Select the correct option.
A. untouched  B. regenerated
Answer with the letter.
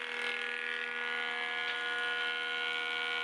A